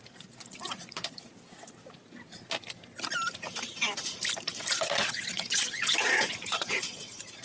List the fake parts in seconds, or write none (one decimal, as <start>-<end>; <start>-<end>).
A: 0.0-1.3; 4.7-7.4